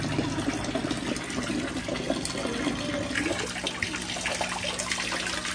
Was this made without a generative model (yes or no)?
yes